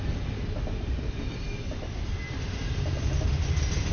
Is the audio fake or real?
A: real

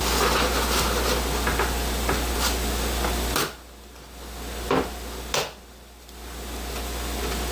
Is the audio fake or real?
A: real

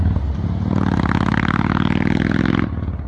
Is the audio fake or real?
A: real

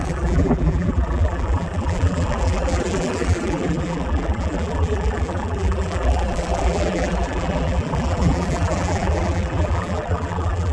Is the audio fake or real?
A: fake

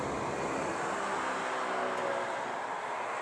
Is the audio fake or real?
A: real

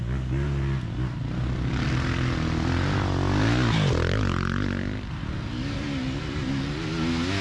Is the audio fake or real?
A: real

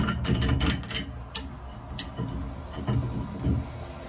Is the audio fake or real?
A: real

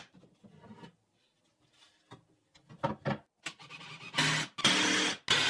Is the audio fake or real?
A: real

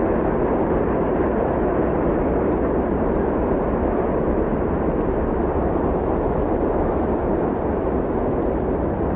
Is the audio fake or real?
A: real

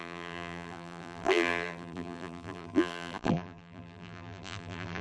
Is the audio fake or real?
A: fake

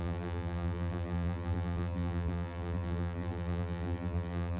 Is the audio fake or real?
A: fake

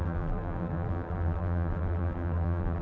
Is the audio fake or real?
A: fake